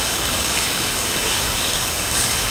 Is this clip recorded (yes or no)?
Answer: no